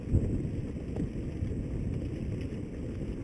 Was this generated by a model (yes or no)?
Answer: no